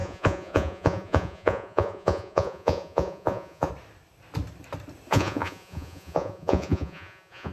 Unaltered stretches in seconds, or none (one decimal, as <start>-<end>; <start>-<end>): 3.7-5.1